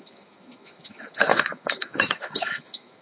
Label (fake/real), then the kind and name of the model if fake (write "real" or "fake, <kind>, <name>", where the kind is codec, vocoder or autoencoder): fake, autoencoder, DAC-VAE